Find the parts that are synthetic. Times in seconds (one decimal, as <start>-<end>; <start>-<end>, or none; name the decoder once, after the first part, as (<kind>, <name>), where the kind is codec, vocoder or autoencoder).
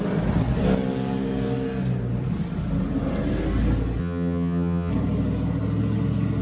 4.0-4.9 (vocoder, HiFi-GAN)